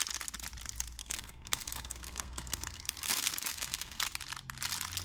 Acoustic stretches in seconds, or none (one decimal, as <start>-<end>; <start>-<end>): 0.0-1.0; 4.0-5.0